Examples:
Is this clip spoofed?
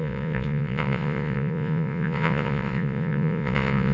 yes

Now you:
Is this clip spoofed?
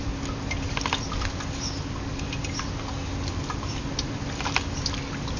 no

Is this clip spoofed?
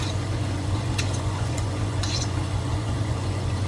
yes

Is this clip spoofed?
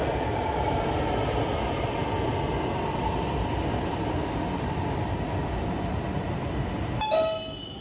no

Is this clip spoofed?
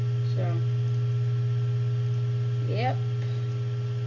no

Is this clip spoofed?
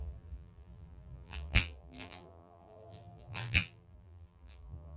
yes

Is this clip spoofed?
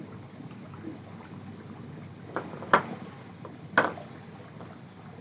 no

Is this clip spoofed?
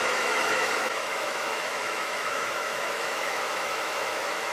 yes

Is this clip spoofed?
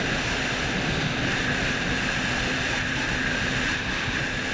no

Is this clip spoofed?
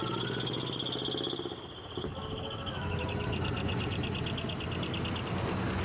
no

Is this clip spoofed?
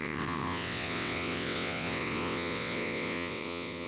yes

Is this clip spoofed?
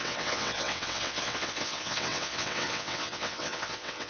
yes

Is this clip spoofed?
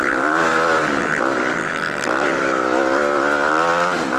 no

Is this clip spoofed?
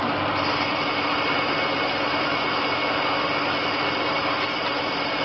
yes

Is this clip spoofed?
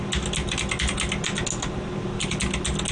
no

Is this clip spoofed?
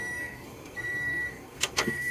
yes